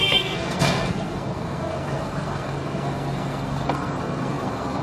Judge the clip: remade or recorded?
remade